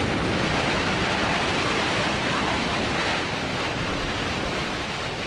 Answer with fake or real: fake